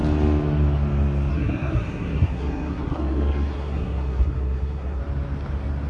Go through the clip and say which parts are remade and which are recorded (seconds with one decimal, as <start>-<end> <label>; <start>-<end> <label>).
0.0-1.3 recorded; 1.3-5.0 remade; 5.0-5.9 recorded

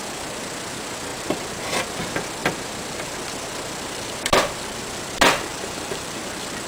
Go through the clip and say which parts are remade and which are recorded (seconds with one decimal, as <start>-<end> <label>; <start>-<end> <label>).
0.0-5.5 recorded; 5.5-6.2 remade; 6.2-6.7 recorded

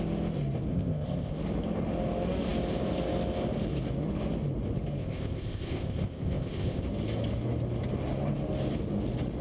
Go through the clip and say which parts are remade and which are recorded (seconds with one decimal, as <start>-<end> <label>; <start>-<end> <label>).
0.0-0.7 recorded; 0.7-1.3 remade; 1.3-5.0 recorded; 5.0-6.8 remade; 6.8-9.4 recorded

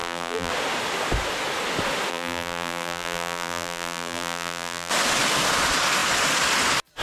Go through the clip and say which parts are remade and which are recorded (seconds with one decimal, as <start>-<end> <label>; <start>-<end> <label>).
0.0-0.5 remade; 0.5-2.1 recorded; 2.1-4.9 remade; 4.9-7.0 recorded

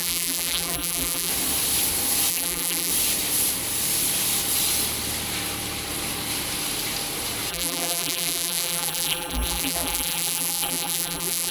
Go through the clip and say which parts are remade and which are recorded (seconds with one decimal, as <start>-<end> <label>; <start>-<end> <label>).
0.0-1.3 remade; 1.3-2.3 recorded; 2.3-2.9 remade; 2.9-7.5 recorded; 7.5-11.5 remade

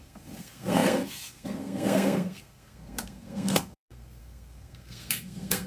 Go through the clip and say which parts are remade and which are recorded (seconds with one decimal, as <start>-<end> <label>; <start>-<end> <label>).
0.0-5.7 remade

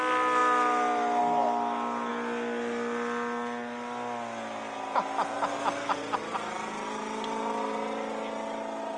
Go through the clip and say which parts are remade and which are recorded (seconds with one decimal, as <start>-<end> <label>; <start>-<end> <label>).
0.0-9.0 recorded

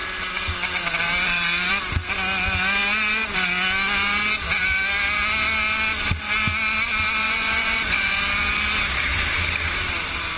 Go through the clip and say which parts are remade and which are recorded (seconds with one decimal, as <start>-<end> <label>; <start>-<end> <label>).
0.0-7.2 recorded; 7.2-8.2 remade; 8.2-10.4 recorded